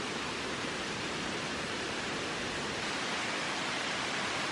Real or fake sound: fake